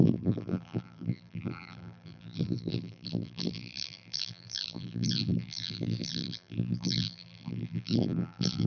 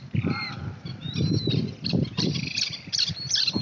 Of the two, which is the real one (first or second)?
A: second